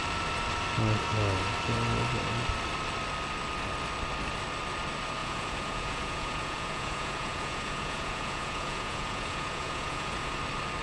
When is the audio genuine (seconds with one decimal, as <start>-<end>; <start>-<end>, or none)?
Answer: 0.0-5.2; 10.4-10.8